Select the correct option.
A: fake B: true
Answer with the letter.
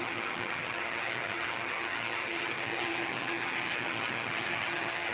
A